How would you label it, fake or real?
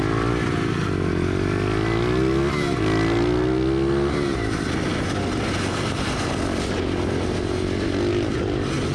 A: real